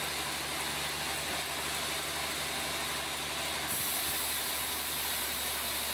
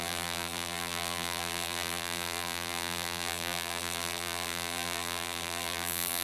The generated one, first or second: second